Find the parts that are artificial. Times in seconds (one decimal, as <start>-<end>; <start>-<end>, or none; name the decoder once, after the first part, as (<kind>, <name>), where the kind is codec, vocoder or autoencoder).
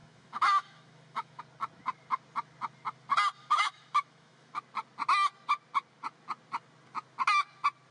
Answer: 0.0-1.4 (autoencoder, DAC-VAE); 3.4-4.6